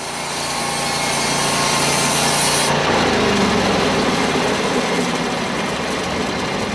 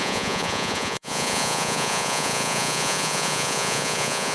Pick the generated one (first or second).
second